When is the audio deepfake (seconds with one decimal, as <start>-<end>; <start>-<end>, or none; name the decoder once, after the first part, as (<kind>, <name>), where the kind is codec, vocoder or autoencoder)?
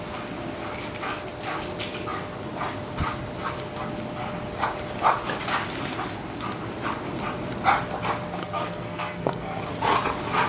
8.4-9.6 (codec, SNAC)